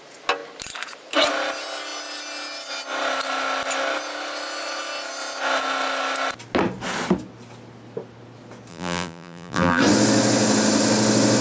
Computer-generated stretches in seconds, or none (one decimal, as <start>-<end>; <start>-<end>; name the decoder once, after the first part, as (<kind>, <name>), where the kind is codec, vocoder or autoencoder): 8.7-9.8 (vocoder, BigVGAN v2)